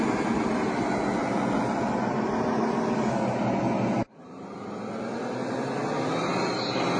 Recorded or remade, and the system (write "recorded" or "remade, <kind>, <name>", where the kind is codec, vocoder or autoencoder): recorded